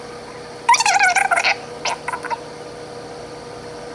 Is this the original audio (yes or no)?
yes